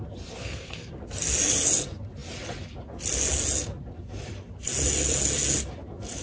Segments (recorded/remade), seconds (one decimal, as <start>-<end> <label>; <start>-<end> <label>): 0.0-0.4 recorded; 0.4-0.9 remade; 0.9-6.2 recorded